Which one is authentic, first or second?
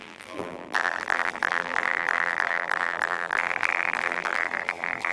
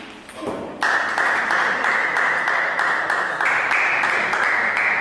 second